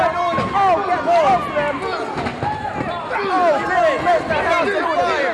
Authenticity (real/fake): real